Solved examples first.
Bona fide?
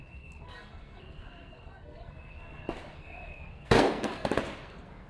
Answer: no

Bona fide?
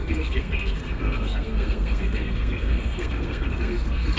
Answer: no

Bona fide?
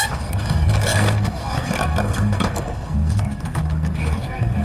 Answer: no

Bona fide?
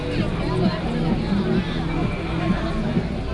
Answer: yes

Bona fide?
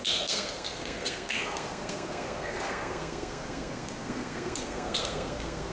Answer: no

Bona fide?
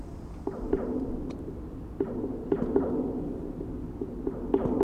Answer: yes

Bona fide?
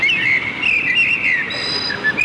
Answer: yes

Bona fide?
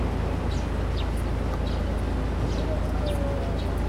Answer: yes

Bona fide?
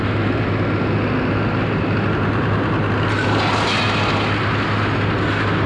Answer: yes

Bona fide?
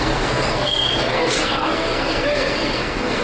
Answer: no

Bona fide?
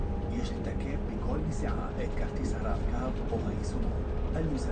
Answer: yes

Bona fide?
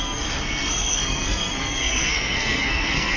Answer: no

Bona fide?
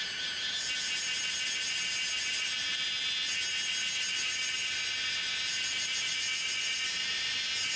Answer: yes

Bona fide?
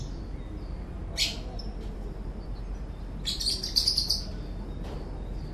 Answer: yes